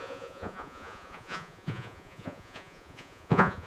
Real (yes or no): no